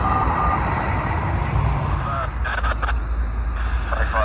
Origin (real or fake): real